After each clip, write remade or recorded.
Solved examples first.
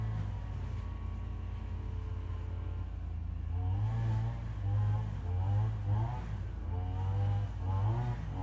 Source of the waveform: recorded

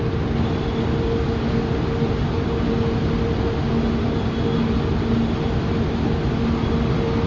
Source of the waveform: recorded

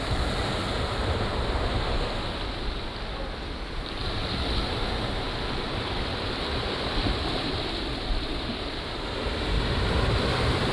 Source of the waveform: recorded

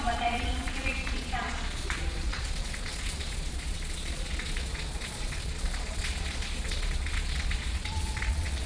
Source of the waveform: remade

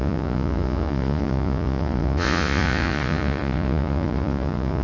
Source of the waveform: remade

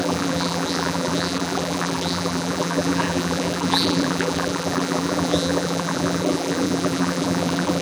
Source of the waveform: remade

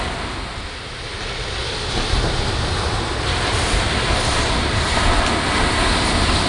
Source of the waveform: recorded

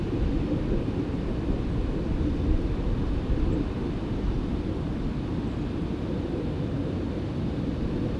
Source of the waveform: recorded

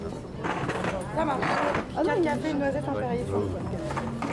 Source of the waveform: recorded